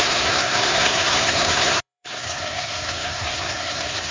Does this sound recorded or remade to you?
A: remade